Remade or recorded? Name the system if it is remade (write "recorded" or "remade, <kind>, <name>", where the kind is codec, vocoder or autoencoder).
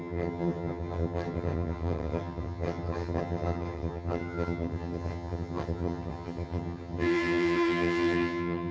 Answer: remade, vocoder, HiFi-GAN